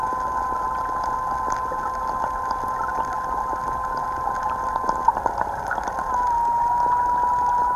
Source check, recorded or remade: recorded